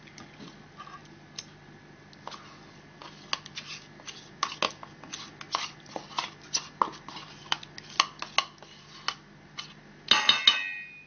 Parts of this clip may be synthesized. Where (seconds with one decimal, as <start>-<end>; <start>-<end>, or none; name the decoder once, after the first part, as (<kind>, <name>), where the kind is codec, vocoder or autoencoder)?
none